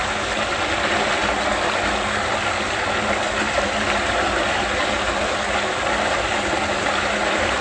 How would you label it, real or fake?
real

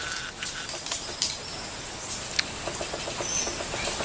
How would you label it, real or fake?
real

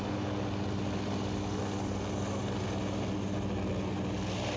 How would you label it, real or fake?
real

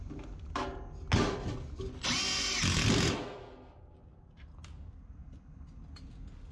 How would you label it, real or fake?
real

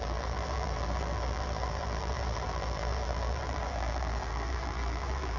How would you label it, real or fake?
fake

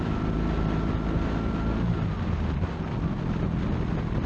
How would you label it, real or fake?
real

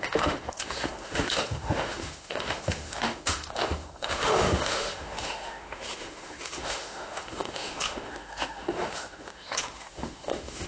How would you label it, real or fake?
fake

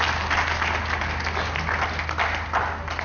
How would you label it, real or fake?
real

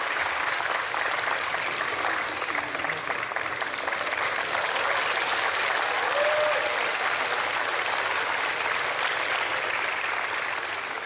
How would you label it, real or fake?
real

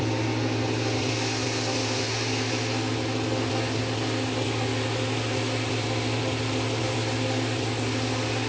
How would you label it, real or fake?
real